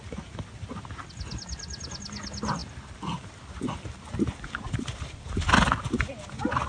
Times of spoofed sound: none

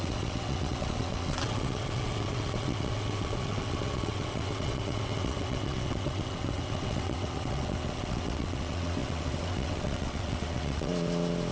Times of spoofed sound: 0.0-10.9 (vocoder, WaveNeXt)

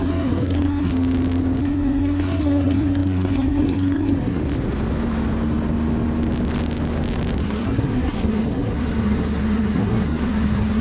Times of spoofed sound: 0.0-0.9 (codec, SNAC); 1.6-4.4; 7.4-10.8